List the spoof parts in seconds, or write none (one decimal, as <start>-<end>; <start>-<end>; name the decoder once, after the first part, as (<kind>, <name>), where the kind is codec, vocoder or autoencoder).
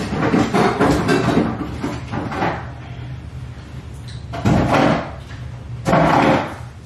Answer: none